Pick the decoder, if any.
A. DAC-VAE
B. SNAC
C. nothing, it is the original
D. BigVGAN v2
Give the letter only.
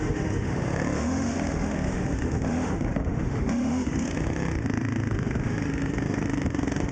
A